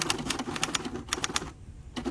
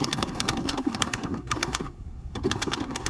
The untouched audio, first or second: first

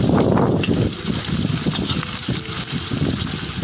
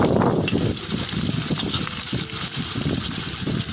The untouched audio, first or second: first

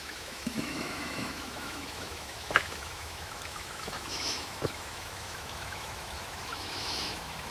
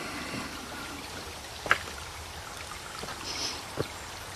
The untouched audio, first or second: second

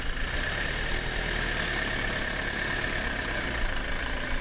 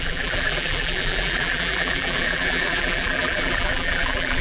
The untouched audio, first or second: first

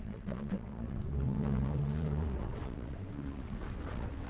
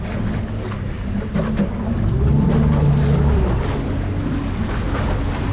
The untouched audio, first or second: second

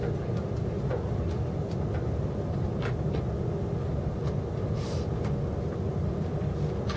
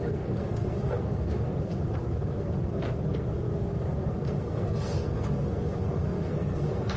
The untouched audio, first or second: first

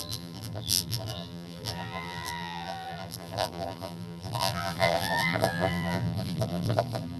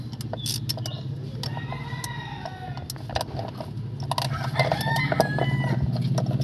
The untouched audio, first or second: second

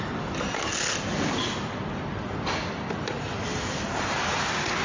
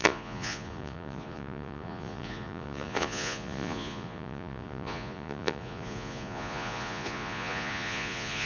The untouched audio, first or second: first